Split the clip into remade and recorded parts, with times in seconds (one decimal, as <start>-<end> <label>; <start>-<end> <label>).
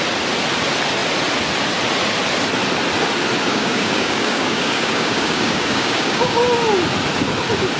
0.0-3.5 recorded; 3.5-6.4 remade; 6.4-7.8 recorded